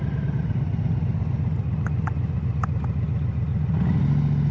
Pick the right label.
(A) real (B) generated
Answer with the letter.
A